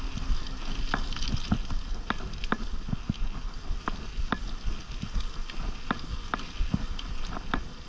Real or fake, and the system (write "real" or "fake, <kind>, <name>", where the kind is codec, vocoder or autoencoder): real